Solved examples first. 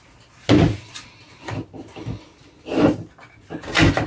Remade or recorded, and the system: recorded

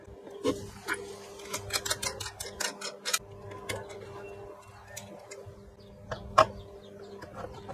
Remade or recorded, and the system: recorded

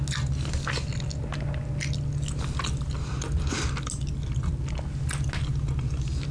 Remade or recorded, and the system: recorded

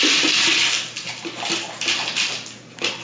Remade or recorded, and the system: recorded